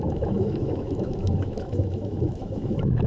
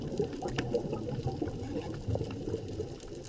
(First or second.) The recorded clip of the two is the second